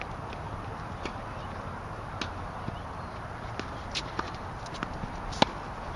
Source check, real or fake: real